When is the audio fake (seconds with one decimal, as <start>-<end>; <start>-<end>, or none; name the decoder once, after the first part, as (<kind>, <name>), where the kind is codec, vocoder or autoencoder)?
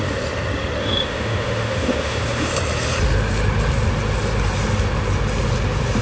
0.8-2.5 (autoencoder, DAC-VAE)